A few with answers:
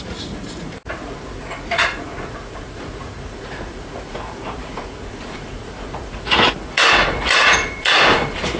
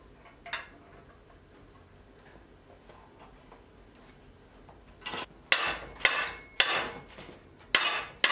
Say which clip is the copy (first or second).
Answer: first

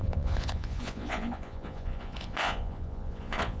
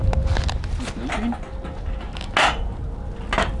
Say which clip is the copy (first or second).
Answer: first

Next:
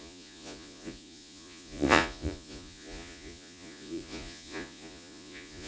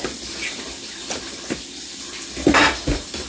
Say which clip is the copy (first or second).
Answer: first